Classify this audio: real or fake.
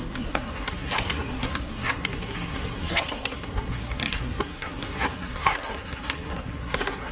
fake